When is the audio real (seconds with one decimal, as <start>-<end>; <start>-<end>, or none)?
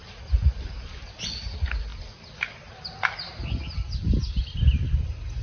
0.0-5.4